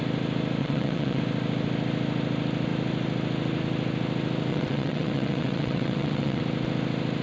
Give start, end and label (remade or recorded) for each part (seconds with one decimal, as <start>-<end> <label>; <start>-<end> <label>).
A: 0.0-0.6 recorded; 0.6-1.2 remade; 1.2-4.5 recorded; 4.5-6.4 remade; 6.4-7.2 recorded